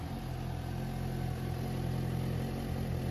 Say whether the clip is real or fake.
real